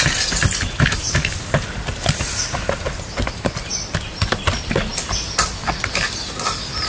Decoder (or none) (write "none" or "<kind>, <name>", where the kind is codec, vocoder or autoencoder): none